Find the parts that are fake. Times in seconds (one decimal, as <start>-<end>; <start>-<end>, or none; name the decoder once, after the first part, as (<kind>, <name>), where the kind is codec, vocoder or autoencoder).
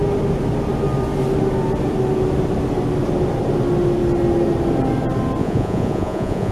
5.4-6.5 (vocoder, Vocos)